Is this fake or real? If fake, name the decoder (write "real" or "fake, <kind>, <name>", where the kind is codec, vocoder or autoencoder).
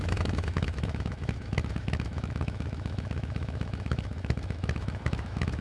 fake, autoencoder, DAC-VAE